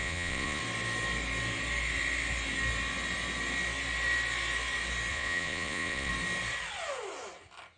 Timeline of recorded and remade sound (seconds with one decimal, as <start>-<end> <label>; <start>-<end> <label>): 0.0-0.6 remade; 0.6-5.1 recorded; 5.1-6.1 remade; 6.1-7.8 recorded